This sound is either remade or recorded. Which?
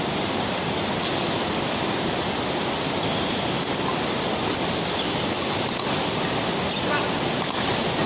recorded